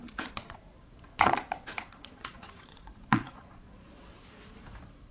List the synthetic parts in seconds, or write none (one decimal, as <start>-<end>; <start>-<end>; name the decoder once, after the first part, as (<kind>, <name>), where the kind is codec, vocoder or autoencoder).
0.0-0.6 (vocoder, Vocos); 1.1-4.2